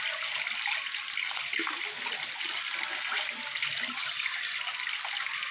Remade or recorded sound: recorded